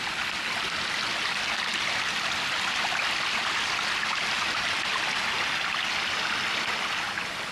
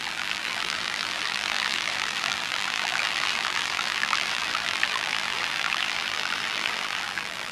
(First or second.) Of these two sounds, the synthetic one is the second